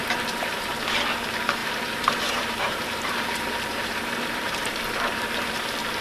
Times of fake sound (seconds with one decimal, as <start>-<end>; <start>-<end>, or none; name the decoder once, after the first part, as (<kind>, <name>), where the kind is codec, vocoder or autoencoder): 0.0-0.7 (vocoder, BigVGAN v2); 1.6-5.2